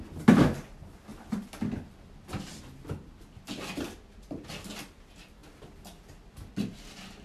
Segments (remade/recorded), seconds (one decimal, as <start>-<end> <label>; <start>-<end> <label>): 0.0-7.2 recorded